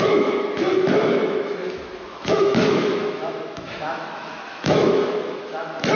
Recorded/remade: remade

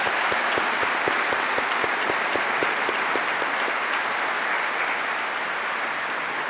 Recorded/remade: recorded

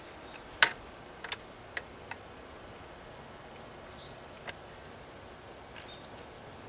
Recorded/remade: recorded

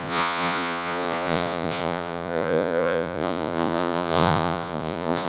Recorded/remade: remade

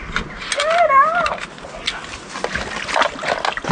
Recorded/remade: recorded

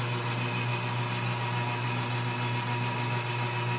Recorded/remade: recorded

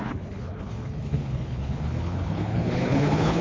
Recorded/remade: remade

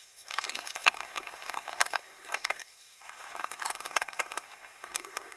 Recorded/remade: remade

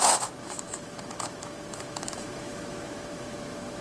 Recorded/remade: remade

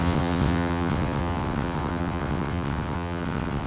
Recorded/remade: remade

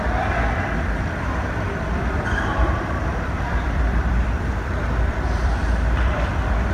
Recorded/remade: remade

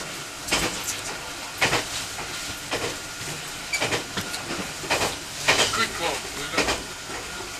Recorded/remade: recorded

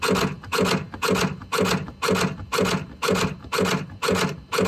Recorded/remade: recorded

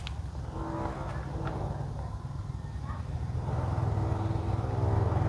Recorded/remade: recorded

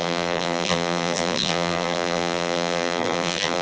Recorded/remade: remade